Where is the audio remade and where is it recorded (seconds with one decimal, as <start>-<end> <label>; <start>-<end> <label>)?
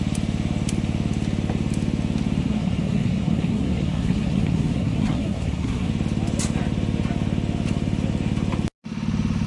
0.0-2.4 recorded; 2.4-5.9 remade; 5.9-9.5 recorded